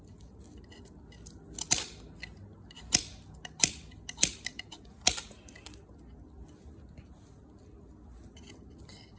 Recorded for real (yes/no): yes